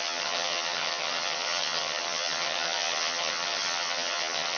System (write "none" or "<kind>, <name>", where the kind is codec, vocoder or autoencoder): vocoder, HiFi-GAN